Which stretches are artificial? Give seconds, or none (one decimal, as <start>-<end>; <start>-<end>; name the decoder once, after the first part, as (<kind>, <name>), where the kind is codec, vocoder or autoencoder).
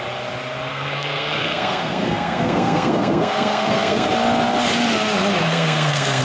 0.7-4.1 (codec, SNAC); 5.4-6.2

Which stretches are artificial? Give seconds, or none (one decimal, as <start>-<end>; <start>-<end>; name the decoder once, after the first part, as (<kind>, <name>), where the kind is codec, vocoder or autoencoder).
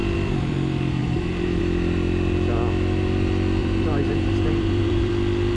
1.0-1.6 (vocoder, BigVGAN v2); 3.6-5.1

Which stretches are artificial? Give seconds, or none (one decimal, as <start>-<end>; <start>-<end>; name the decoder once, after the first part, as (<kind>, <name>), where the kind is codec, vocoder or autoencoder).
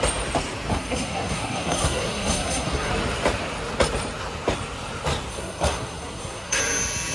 0.7-2.9 (codec, SNAC); 5.3-6.6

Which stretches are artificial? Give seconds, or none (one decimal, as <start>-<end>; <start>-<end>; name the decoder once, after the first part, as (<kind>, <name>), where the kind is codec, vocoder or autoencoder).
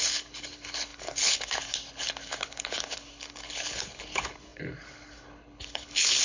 0.0-6.2 (codec, HILCodec)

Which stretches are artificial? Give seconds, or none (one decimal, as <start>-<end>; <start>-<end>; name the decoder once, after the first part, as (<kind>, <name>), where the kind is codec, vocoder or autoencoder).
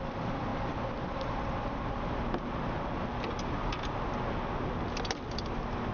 none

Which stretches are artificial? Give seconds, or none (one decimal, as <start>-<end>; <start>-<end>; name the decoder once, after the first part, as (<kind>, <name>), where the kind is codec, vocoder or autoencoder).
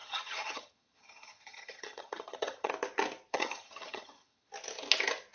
0.0-2.7 (vocoder, HiFi-GAN); 3.3-4.5